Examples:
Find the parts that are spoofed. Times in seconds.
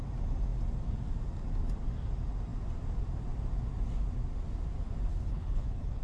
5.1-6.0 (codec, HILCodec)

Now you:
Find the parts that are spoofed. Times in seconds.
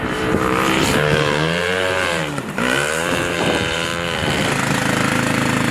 0.0-3.9 (vocoder, BigVGAN v2); 5.1-5.7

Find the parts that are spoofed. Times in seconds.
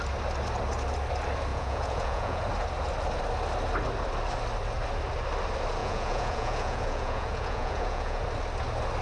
1.5-2.4 (vocoder, Vocos); 5.8-8.2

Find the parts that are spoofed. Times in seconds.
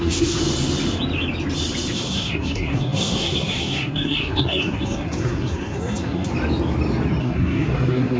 0.0-0.4 (codec, SNAC); 1.9-6.3; 7.2-8.2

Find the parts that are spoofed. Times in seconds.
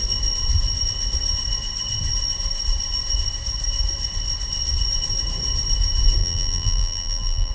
6.2-7.5 (vocoder, BigVGAN v2)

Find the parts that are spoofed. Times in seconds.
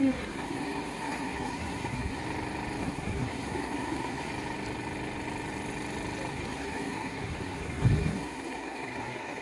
0.0-2.2 (codec, SNAC); 2.8-4.3; 6.3-9.4